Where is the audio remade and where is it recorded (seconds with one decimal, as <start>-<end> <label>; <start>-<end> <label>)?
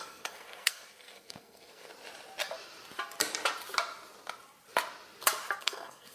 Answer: 0.0-1.9 remade; 1.9-5.6 recorded; 5.6-6.1 remade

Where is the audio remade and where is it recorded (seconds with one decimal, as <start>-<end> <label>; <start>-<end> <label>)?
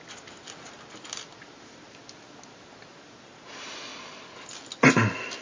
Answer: 0.0-5.4 recorded